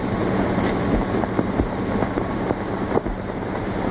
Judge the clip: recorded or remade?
remade